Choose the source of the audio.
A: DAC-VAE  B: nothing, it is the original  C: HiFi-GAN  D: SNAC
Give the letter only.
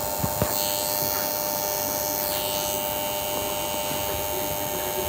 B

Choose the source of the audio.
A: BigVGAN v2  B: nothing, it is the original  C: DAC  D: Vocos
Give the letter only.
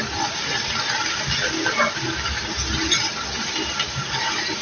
B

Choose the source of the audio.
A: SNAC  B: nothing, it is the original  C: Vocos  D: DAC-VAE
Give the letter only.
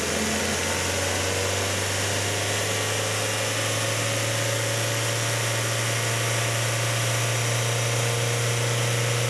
B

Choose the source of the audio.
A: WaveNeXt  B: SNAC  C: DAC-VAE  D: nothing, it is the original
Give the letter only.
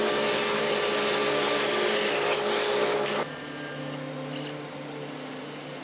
D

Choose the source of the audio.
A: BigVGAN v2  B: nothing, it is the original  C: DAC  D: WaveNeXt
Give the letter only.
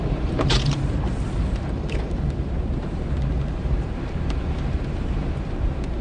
A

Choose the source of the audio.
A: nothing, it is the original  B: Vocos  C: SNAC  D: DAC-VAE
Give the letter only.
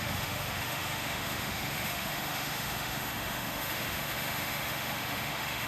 D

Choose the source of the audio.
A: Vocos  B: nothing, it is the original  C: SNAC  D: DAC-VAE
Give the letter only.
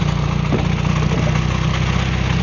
B